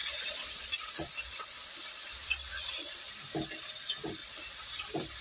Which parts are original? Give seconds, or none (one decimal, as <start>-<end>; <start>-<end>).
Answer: 3.1-4.2; 4.8-5.2